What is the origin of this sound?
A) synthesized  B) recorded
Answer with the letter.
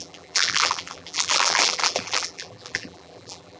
A